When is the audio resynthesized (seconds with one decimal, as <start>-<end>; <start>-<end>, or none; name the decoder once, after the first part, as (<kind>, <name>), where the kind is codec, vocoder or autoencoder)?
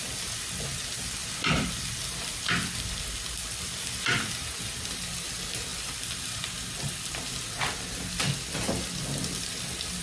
none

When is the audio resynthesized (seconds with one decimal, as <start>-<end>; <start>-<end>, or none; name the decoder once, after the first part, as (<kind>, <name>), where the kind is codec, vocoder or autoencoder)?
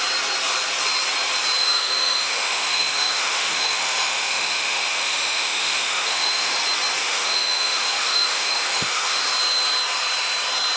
1.6-6.5 (autoencoder, DAC-VAE); 7.0-9.2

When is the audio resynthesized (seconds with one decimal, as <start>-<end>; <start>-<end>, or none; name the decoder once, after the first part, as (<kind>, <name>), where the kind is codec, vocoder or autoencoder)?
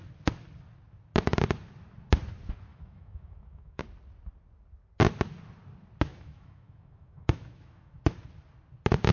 2.7-3.8 (autoencoder, DAC-VAE); 6.1-8.0